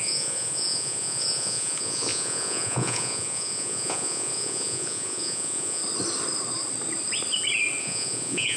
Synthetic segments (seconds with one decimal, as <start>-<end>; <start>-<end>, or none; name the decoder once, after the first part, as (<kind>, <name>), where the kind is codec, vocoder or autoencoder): 0.0-5.8 (vocoder, Vocos); 7.8-8.6